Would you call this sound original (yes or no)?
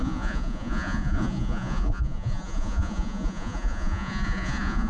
no